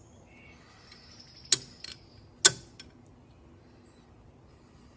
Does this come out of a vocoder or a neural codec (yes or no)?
no